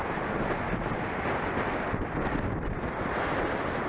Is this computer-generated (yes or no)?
no